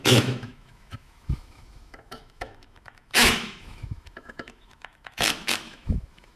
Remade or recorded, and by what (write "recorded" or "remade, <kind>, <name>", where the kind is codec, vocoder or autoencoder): remade, autoencoder, DAC-VAE